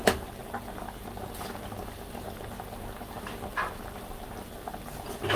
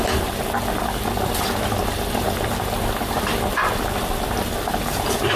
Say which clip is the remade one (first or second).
second